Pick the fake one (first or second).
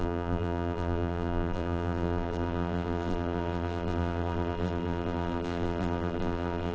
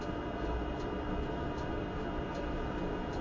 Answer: first